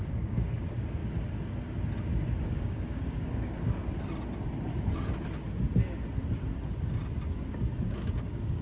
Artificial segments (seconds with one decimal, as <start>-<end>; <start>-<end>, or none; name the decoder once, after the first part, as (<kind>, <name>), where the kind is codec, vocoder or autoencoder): 0.0-1.0 (codec, DAC); 2.4-3.8; 7.8-8.6